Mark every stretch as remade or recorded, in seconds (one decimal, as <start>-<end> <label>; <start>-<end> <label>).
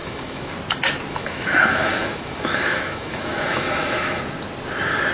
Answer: 0.0-0.5 remade; 0.5-1.1 recorded; 1.1-4.2 remade; 4.2-5.1 recorded